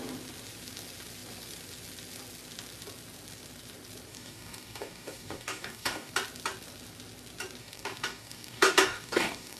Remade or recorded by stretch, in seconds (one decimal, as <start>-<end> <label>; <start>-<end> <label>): 0.0-4.1 recorded; 4.1-6.1 remade; 6.1-7.6 recorded; 7.6-9.6 remade